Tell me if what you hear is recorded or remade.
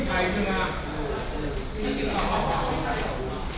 recorded